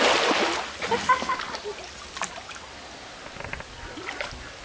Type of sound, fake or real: real